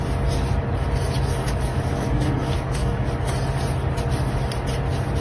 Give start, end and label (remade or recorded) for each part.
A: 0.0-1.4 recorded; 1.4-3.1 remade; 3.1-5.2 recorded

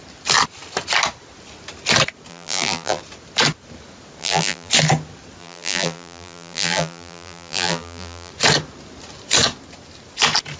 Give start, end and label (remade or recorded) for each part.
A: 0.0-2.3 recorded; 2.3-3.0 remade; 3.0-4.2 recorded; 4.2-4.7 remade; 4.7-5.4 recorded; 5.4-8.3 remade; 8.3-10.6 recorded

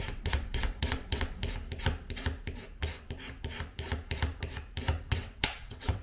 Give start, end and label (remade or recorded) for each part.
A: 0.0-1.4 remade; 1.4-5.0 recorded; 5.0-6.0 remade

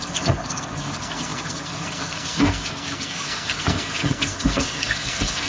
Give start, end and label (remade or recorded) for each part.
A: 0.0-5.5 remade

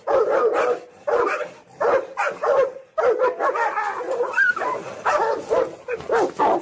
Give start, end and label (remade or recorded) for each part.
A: 0.0-6.6 recorded

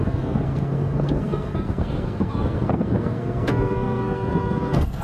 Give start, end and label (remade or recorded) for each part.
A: 0.0-5.0 remade